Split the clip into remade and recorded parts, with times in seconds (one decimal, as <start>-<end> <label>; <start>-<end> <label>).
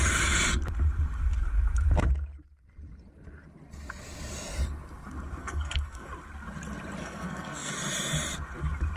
0.0-5.4 recorded; 5.4-6.1 remade; 6.1-7.0 recorded; 7.0-7.7 remade; 7.7-9.0 recorded